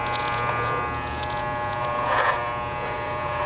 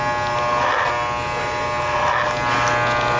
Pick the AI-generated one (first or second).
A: first